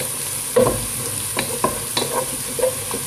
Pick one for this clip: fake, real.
real